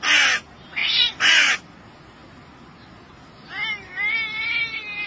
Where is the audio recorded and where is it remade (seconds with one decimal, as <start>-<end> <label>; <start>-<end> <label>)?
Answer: 0.0-0.8 recorded; 0.8-1.5 remade; 1.5-5.1 recorded